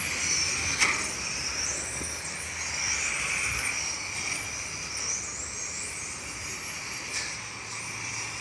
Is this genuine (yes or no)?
yes